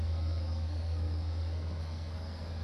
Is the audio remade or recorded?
remade